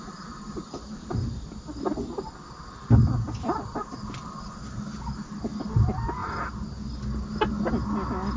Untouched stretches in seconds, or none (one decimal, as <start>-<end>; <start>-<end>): 0.0-8.4